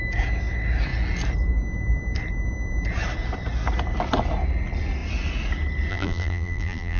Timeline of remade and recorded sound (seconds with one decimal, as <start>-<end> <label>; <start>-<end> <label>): 0.0-5.9 recorded; 5.9-7.0 remade